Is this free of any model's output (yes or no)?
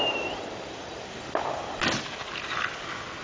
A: yes